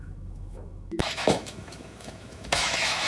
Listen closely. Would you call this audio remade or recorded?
remade